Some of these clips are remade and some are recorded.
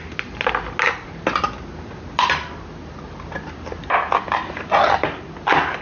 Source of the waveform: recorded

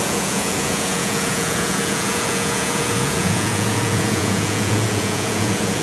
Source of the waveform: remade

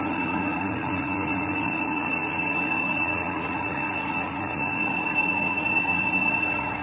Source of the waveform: remade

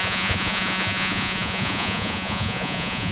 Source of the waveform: remade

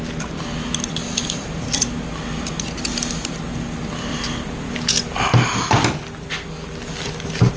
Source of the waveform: recorded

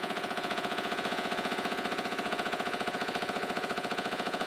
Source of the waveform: remade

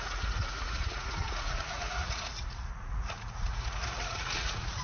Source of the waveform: remade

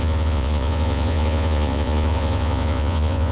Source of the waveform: remade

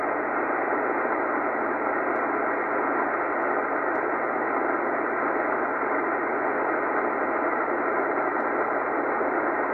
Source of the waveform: recorded